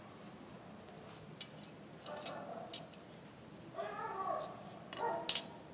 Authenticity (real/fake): real